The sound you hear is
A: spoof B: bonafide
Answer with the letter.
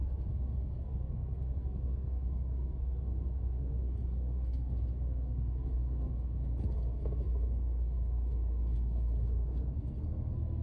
A